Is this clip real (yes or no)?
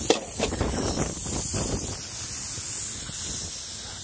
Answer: yes